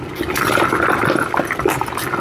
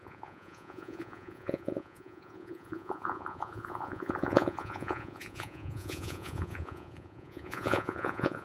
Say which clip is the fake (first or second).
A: second